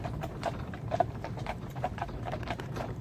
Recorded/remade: remade